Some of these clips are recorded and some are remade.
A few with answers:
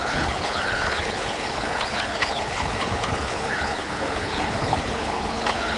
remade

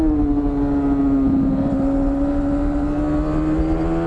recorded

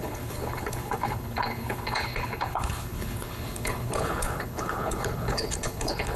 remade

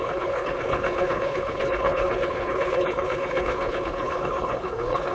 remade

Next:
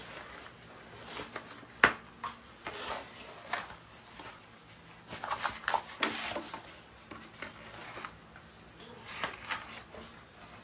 recorded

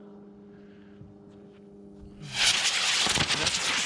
recorded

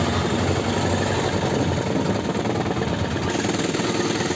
recorded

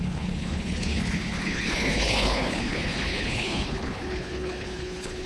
remade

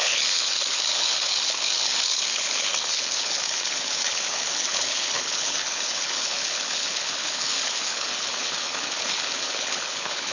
remade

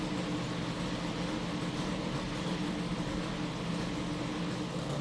recorded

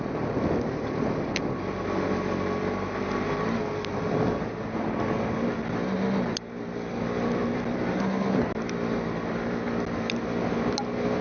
recorded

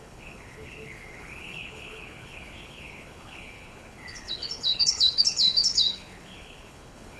remade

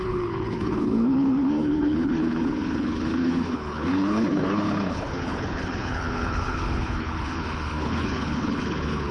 remade